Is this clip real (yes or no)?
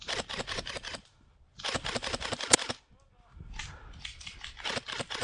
yes